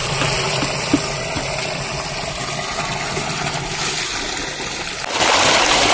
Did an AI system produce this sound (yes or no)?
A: no